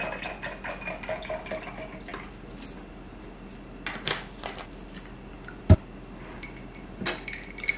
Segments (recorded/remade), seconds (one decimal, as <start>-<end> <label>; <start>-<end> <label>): 0.0-7.8 recorded